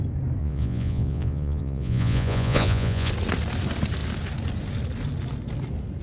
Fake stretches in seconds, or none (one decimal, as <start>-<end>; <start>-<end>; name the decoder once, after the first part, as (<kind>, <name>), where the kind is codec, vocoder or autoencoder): 0.4-3.1 (vocoder, Vocos)